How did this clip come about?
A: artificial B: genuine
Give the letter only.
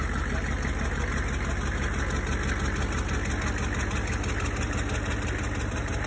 B